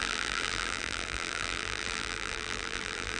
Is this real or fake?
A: fake